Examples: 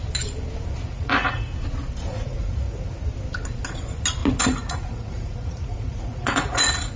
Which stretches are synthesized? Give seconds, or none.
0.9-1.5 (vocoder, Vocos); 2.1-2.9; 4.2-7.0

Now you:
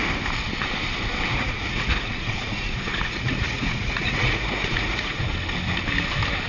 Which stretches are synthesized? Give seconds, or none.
1.3-5.2 (vocoder, Vocos)